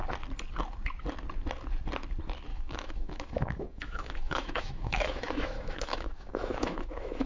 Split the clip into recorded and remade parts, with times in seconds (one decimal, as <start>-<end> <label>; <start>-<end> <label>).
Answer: 0.0-2.5 recorded; 2.5-7.3 remade